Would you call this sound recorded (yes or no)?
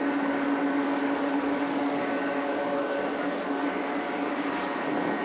no